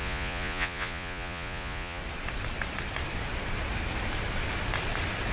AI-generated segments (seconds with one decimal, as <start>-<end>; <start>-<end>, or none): 0.0-2.0